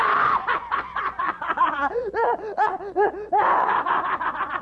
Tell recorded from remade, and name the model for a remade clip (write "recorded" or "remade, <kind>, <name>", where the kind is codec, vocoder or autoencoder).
remade, vocoder, Vocos